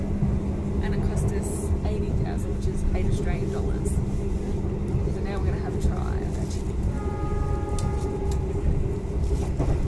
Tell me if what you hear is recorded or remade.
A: recorded